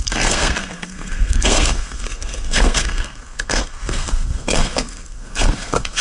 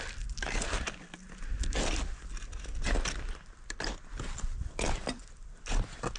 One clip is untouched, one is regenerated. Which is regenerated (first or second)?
first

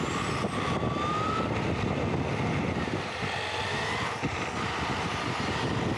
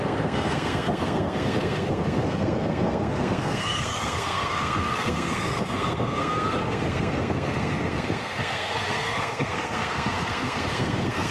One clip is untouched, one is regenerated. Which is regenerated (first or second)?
second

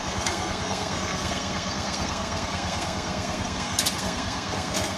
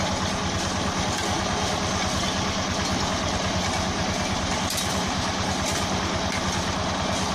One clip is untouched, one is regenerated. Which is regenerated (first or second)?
first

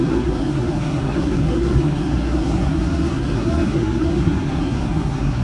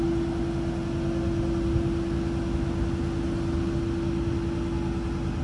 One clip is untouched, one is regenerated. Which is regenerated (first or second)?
first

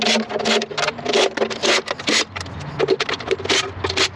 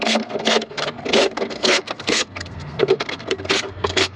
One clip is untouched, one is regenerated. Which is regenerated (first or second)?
second